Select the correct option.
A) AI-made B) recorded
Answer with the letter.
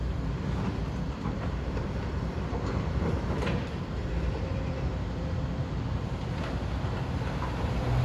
A